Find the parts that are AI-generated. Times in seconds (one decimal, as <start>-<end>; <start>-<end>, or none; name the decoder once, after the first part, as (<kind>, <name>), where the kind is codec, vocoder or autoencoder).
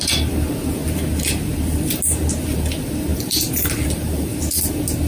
3.1-4.4 (vocoder, BigVGAN v2)